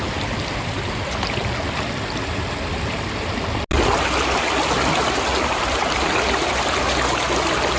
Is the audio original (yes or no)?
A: yes